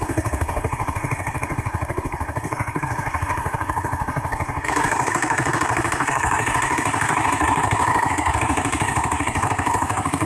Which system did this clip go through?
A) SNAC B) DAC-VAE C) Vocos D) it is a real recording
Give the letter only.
A